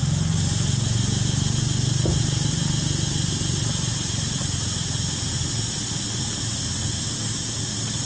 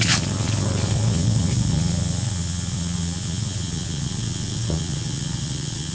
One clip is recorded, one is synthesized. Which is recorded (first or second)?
first